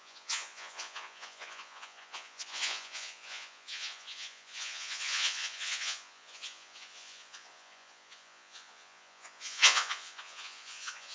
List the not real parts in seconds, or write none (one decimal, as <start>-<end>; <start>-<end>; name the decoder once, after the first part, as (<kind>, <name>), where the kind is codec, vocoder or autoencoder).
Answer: 0.0-11.1 (vocoder, Vocos)